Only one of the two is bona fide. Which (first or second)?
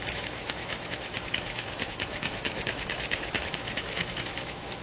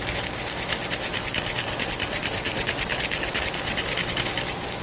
second